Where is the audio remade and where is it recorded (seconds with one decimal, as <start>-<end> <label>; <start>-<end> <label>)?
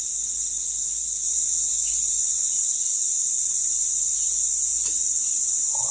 0.0-5.9 recorded